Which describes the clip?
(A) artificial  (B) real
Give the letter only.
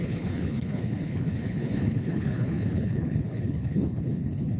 A